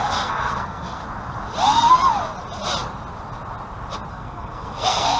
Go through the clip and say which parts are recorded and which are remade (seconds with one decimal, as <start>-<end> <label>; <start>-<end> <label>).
0.0-1.0 remade; 1.0-4.1 recorded; 4.1-5.2 remade